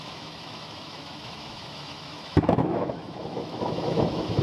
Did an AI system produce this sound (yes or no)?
yes